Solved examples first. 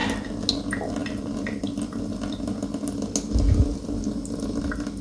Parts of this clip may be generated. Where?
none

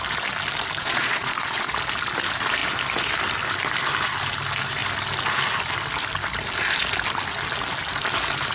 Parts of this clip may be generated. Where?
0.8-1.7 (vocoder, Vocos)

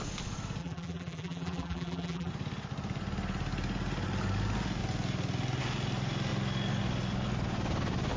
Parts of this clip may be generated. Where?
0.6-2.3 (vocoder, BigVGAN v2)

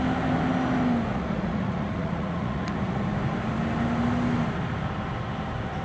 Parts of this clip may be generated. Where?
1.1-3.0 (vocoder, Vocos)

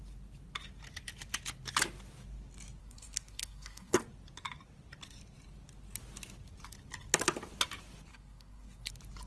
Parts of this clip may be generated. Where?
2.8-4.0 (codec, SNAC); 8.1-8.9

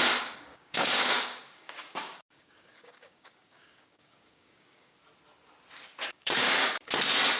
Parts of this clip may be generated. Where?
0.5-4.9 (codec, DAC); 6.1-6.9